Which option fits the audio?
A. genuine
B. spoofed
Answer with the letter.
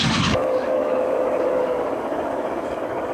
B